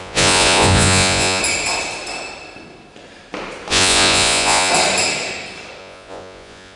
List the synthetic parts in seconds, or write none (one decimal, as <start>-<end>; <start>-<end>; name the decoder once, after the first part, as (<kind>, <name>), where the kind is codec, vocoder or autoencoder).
0.0-1.4 (vocoder, Vocos); 3.7-4.7; 5.8-6.8